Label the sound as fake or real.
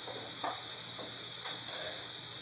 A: real